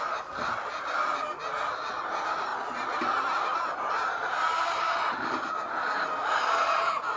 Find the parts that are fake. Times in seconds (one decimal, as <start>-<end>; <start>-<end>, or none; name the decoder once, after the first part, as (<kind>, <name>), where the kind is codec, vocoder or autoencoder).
none